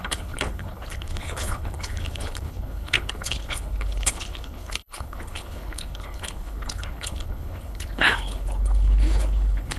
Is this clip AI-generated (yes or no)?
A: yes